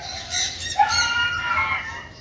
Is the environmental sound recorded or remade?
recorded